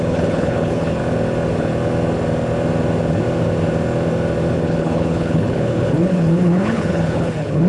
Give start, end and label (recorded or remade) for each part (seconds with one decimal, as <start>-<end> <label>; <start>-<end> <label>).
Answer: 0.0-1.0 remade; 1.0-4.5 recorded; 4.5-7.7 remade